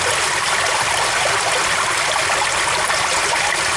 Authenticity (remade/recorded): recorded